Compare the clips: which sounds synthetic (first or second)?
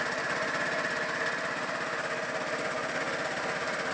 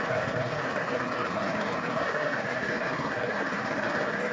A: second